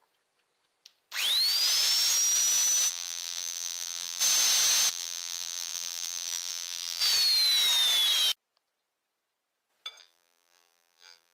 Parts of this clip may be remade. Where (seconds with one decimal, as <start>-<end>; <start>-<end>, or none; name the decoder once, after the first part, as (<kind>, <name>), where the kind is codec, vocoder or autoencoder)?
2.9-4.2 (vocoder, BigVGAN v2); 4.9-7.0; 10.0-11.3

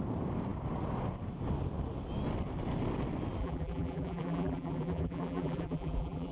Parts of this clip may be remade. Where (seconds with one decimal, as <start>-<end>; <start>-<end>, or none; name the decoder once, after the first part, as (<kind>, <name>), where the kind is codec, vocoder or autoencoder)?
3.4-6.3 (vocoder, BigVGAN v2)

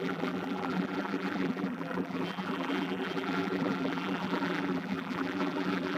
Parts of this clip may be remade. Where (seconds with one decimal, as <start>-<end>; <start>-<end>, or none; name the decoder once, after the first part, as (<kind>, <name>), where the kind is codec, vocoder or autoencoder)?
0.0-6.0 (vocoder, BigVGAN v2)

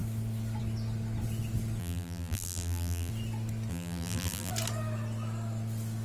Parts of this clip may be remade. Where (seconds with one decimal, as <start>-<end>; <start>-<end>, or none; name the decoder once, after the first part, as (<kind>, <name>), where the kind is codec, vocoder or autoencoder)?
1.8-3.1 (vocoder, BigVGAN v2); 3.7-4.5

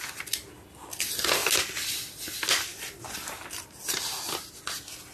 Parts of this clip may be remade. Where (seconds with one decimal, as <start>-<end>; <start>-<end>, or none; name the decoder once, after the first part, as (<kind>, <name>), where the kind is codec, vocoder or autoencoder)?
none

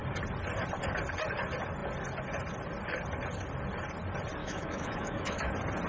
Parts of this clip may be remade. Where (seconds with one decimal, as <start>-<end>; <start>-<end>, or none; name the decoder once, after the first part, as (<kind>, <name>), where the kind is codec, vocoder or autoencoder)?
4.4-5.5 (autoencoder, DAC-VAE)

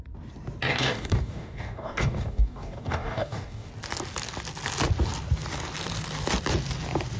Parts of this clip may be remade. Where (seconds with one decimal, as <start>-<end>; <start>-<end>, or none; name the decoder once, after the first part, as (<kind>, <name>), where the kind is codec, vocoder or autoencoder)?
0.7-3.7 (codec, DAC)

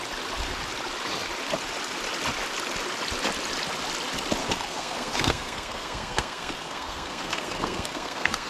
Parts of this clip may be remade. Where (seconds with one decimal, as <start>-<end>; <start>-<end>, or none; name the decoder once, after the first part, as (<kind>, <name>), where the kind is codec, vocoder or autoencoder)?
4.4-8.5 (codec, SNAC)